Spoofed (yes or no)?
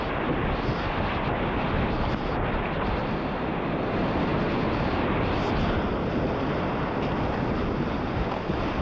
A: no